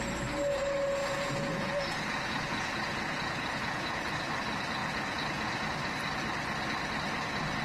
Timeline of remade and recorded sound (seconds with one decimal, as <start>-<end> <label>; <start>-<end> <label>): 0.0-1.0 recorded; 1.0-4.3 remade; 4.3-4.8 recorded; 4.8-5.9 remade; 5.9-7.6 recorded